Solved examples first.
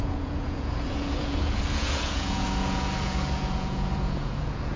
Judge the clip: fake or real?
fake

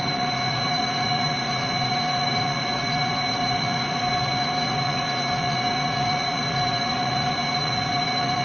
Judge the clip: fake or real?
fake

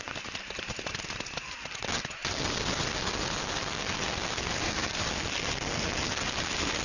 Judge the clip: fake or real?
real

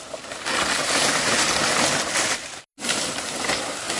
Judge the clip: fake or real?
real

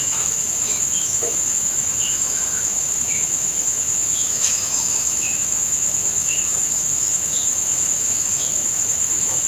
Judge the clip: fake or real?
fake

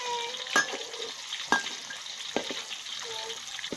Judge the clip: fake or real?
real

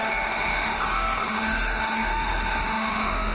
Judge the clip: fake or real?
fake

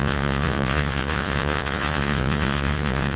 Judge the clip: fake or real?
fake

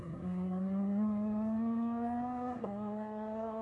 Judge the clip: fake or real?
fake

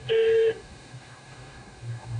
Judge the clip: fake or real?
fake